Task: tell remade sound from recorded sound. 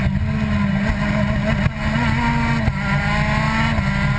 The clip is recorded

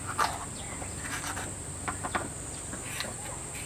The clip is recorded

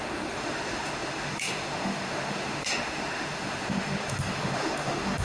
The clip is remade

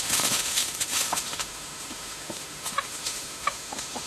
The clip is remade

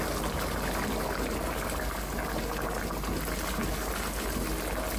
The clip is recorded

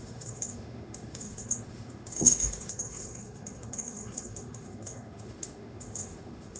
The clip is remade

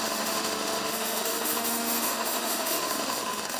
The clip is remade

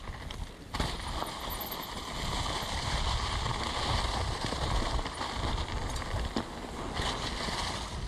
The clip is recorded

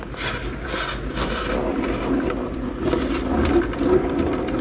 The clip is recorded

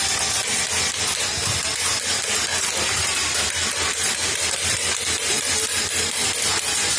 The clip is recorded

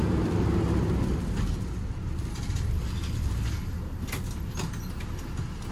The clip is recorded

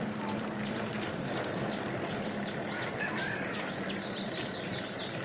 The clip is recorded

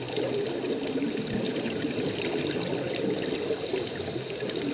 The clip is recorded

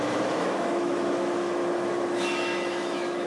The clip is remade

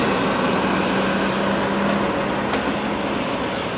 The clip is recorded